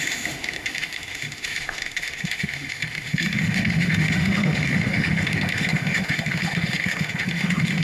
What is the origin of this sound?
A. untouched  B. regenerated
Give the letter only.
B